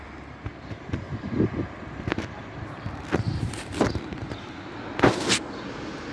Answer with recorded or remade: recorded